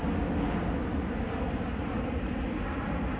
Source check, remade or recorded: recorded